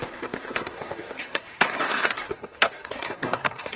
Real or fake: fake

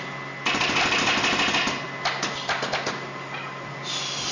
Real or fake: real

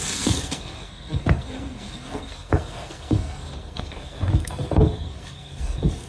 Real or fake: fake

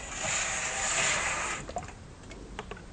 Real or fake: real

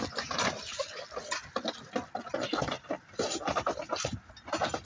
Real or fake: real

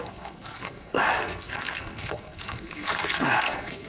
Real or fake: fake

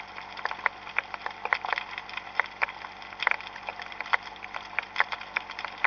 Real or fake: real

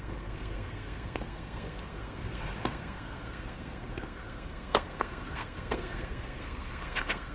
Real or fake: fake